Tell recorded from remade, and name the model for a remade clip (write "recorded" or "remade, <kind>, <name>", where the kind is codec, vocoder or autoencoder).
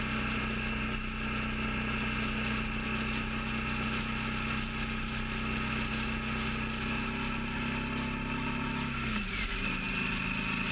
recorded